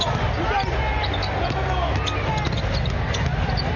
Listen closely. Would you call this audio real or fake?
real